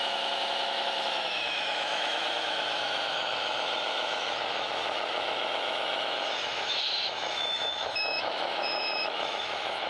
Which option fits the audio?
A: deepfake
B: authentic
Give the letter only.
A